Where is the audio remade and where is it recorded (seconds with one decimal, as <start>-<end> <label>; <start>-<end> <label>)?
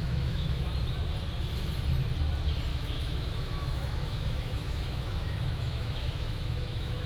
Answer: 0.0-0.7 remade; 0.7-2.7 recorded; 2.7-7.1 remade